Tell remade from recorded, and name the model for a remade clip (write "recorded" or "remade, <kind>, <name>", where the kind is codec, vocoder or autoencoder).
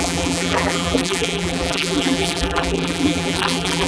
remade, vocoder, BigVGAN v2